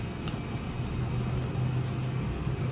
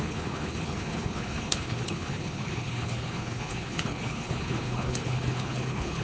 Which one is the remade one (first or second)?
second